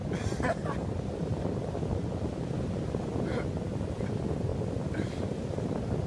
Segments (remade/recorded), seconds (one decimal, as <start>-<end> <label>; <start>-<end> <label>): 0.0-6.1 recorded